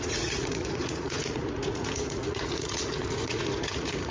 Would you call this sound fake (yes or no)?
yes